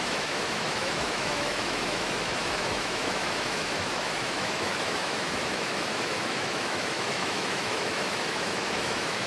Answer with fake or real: fake